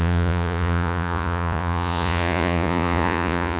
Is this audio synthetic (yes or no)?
yes